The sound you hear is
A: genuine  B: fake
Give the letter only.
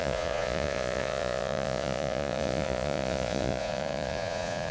B